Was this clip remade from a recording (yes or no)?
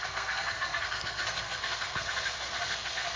yes